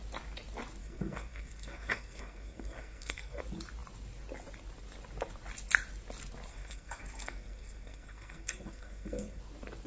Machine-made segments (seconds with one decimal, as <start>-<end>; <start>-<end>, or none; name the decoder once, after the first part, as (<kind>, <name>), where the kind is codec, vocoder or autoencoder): 0.8-3.4 (codec, SNAC); 6.5-9.4